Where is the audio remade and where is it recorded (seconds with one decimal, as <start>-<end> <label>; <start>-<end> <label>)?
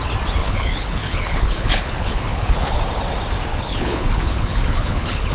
0.0-0.4 recorded; 0.4-2.8 remade; 2.8-3.5 recorded; 3.5-5.3 remade